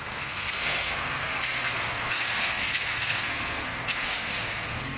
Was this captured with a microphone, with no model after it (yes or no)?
no